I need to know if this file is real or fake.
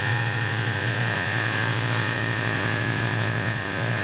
fake